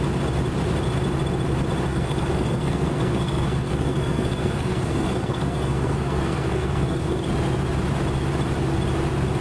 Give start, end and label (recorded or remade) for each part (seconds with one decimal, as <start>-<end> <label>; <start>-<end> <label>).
0.0-1.9 recorded; 1.9-7.2 remade; 7.2-9.4 recorded